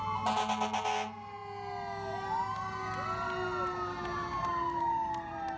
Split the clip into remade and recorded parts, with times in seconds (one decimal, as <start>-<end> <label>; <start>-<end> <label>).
0.0-5.6 recorded